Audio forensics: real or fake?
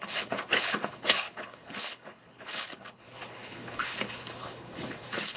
fake